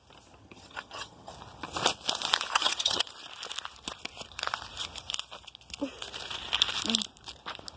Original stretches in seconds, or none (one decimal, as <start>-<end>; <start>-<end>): 0.0-0.4; 1.3-2.5; 3.1-7.8